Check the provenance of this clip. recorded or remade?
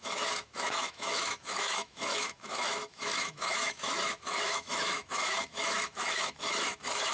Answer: remade